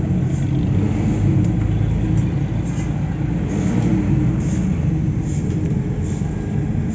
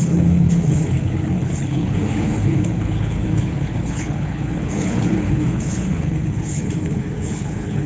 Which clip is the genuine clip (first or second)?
first